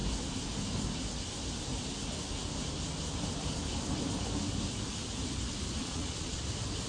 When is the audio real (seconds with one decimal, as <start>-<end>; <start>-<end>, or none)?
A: 0.0-5.8; 6.4-6.9